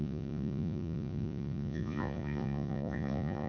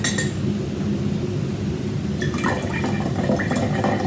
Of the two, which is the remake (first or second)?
first